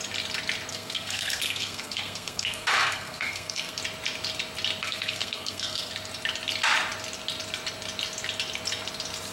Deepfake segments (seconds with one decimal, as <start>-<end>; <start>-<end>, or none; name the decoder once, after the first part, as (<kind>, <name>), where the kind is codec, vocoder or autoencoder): 0.7-3.8 (codec, SNAC); 4.8-5.9